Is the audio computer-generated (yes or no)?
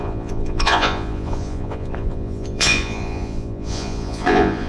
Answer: yes